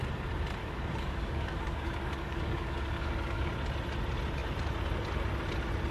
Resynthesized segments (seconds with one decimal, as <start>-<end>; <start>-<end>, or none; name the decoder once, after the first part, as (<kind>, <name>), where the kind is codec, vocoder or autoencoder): 0.6-3.5 (codec, DAC)